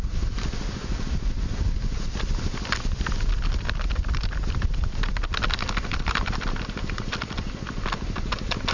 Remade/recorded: recorded